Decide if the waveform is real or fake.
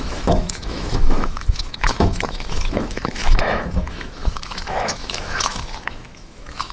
fake